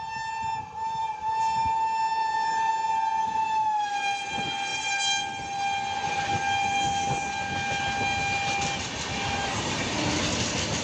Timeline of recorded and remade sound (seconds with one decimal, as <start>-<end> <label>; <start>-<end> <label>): 0.0-1.0 recorded; 1.0-1.6 remade; 1.6-2.2 recorded; 2.2-2.7 remade; 2.7-10.8 recorded